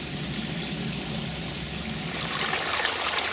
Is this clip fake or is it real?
real